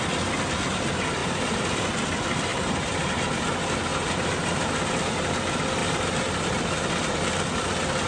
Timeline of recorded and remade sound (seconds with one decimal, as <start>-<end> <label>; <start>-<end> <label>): 0.0-1.2 recorded; 1.2-1.9 remade; 1.9-2.5 recorded; 2.5-3.4 remade; 3.4-3.9 recorded; 3.9-5.3 remade; 5.3-8.1 recorded